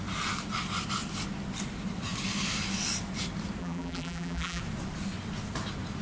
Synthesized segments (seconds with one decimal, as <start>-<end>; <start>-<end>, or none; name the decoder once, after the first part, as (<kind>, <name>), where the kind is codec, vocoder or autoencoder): 3.6-4.6 (vocoder, BigVGAN v2)